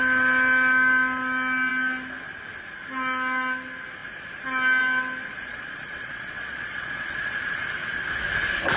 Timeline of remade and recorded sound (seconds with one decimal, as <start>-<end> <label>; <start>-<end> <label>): 0.0-5.3 recorded; 5.3-7.4 remade; 7.4-8.8 recorded